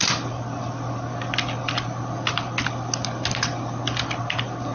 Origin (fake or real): real